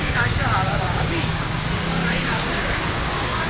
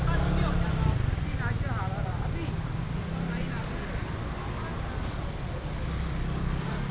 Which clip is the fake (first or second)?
first